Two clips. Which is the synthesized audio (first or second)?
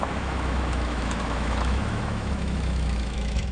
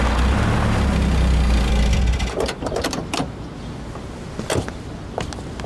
first